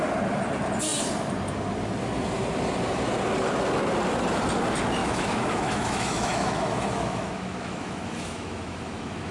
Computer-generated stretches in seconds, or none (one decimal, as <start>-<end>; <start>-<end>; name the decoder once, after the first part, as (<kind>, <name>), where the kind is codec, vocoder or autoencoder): 5.0-9.3 (autoencoder, DAC-VAE)